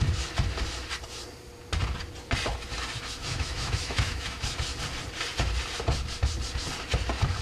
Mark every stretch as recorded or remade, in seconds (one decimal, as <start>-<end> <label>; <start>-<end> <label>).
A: 0.0-3.2 recorded; 3.2-4.4 remade; 4.4-7.4 recorded